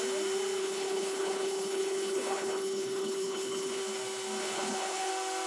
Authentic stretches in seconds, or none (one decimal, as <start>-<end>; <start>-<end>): 0.0-0.6; 3.8-4.4; 5.1-5.5